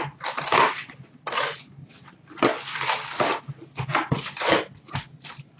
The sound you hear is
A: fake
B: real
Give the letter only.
B